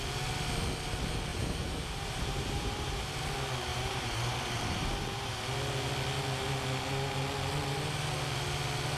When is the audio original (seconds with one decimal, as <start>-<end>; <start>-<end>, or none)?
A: 0.0-1.3; 3.0-3.7; 5.4-9.0